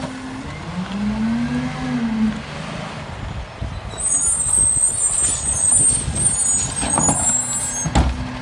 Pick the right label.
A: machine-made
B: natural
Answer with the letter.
B